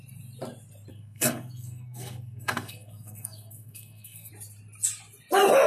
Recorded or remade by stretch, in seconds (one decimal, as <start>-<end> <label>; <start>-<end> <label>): 0.0-0.9 recorded; 0.9-4.3 remade; 4.3-5.7 recorded